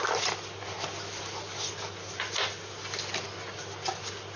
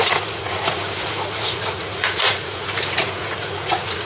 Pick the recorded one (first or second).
first